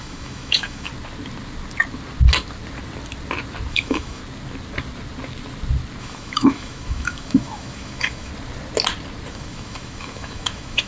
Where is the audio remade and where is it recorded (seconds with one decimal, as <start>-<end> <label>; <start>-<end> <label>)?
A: 0.0-0.9 remade; 0.9-3.7 recorded; 3.7-4.2 remade; 4.2-6.0 recorded; 6.0-8.3 remade; 8.3-9.3 recorded; 9.3-10.9 remade